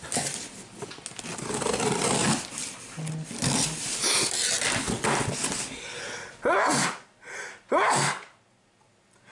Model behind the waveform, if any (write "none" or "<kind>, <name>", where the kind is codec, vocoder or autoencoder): none